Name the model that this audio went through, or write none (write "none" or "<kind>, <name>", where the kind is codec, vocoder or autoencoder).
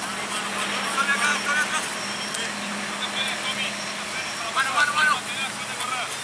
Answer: none